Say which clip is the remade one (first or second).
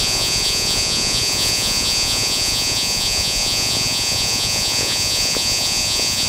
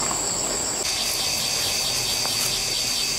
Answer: first